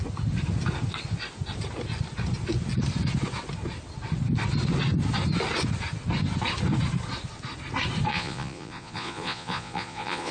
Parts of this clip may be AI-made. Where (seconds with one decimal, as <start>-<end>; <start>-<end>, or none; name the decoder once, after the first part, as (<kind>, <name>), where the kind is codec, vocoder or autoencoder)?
8.1-10.3 (vocoder, Vocos)